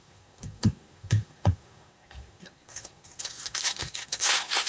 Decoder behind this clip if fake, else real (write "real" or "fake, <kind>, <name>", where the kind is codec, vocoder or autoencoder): fake, codec, SNAC